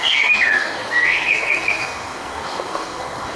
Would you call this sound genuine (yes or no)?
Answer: no